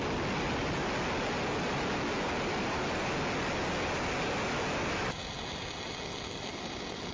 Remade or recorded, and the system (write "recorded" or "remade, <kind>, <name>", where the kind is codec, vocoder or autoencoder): recorded